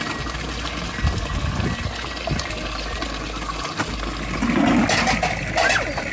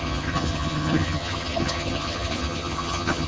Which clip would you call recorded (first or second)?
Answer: first